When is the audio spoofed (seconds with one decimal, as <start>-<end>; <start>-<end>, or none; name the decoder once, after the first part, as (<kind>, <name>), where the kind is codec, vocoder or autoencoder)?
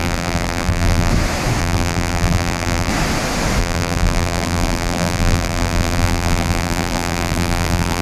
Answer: 0.0-1.1 (vocoder, BigVGAN v2); 1.6-2.9; 3.6-8.0